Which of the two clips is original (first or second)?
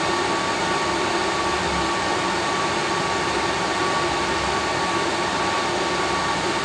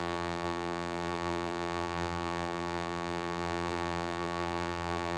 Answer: first